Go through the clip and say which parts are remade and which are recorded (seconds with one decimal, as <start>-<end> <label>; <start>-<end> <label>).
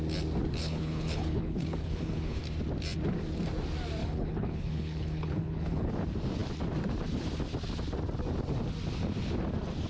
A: 0.0-0.6 recorded; 0.6-2.4 remade; 2.4-4.0 recorded; 4.0-5.9 remade; 5.9-9.9 recorded